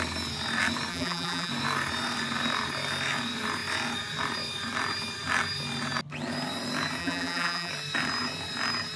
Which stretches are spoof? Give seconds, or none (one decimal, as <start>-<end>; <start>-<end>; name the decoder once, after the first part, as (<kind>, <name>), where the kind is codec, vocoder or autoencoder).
0.9-1.5 (vocoder, BigVGAN v2); 7.0-7.7